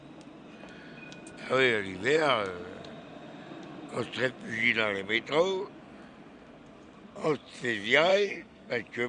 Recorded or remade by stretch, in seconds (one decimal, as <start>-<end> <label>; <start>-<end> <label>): 0.0-8.1 recorded; 8.1-8.7 remade; 8.7-9.1 recorded